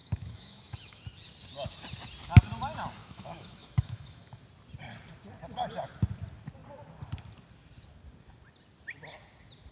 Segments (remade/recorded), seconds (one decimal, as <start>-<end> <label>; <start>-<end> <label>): 0.0-1.0 remade; 1.0-3.0 recorded; 3.0-4.4 remade; 4.4-9.7 recorded